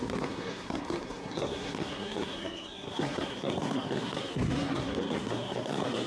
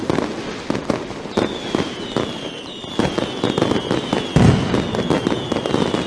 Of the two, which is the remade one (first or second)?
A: first